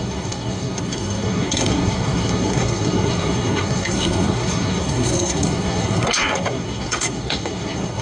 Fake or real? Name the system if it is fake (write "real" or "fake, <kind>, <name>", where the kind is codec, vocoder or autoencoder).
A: fake, codec, SNAC